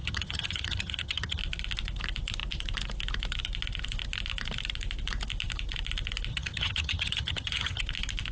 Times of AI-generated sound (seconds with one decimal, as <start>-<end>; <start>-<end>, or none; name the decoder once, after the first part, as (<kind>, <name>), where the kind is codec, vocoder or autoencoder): 0.0-1.4 (vocoder, HiFi-GAN); 6.3-7.8